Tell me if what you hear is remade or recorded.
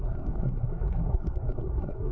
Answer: remade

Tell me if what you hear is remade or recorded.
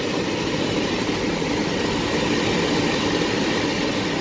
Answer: recorded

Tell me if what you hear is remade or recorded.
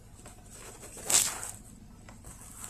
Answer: recorded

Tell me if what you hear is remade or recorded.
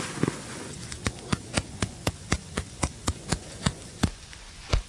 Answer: remade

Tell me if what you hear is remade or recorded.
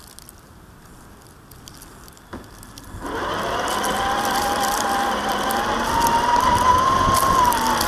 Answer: recorded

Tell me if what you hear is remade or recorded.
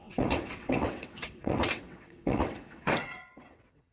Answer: remade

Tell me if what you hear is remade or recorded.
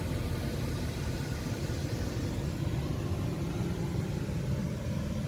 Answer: recorded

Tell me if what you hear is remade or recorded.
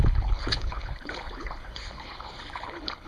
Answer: remade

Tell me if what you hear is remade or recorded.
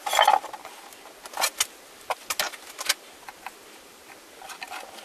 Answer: recorded